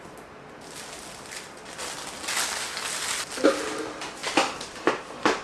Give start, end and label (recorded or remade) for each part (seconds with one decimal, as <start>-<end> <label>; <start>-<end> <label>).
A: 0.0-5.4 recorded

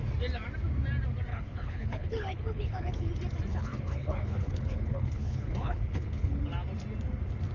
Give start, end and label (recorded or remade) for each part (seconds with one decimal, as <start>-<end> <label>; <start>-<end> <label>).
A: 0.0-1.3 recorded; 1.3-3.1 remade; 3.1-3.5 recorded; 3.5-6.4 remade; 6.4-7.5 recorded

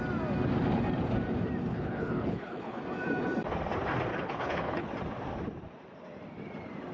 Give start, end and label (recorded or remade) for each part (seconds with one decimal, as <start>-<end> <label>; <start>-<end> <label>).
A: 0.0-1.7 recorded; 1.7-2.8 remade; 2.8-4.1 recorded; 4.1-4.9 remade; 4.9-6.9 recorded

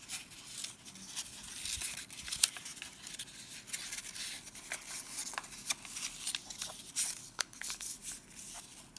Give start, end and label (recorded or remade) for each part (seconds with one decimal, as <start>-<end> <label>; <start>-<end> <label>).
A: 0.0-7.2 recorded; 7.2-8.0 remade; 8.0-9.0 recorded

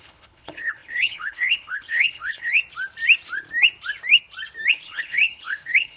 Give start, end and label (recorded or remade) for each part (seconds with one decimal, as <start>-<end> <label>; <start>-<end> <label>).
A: 0.0-2.6 remade; 2.6-4.7 recorded; 4.7-6.0 remade

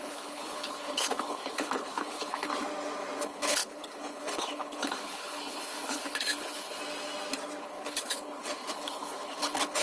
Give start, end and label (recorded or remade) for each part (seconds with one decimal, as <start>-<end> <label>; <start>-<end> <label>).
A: 0.0-2.5 remade; 2.5-3.2 recorded; 3.2-6.8 remade; 6.8-7.6 recorded; 7.6-9.8 remade

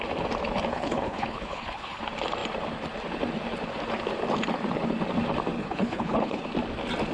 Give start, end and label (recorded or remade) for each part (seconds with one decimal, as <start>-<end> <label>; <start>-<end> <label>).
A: 0.0-0.7 recorded; 0.7-2.0 remade; 2.0-5.6 recorded; 5.6-6.4 remade; 6.4-7.1 recorded